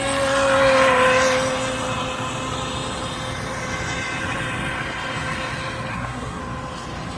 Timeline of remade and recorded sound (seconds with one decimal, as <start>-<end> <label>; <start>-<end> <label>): 0.0-5.9 recorded; 5.9-6.4 remade; 6.4-7.2 recorded